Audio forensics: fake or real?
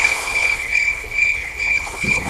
fake